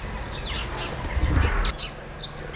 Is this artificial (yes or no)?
no